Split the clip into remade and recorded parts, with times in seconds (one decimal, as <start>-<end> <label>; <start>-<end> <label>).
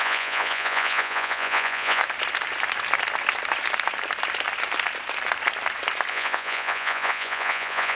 0.0-2.0 remade; 2.0-6.1 recorded; 6.1-8.0 remade